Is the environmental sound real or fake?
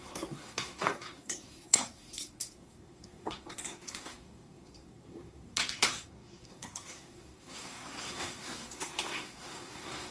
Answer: fake